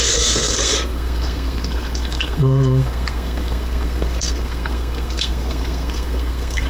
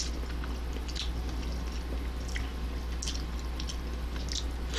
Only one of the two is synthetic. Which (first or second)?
first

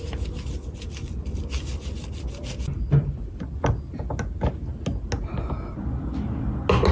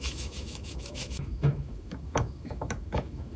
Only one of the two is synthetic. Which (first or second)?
second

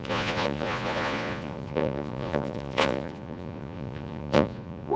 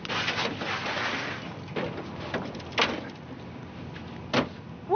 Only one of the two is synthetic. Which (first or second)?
first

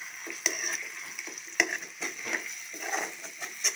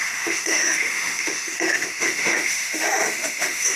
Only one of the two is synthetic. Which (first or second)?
second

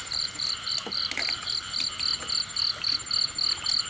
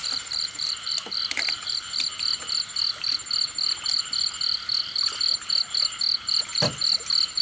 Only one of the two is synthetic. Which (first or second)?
second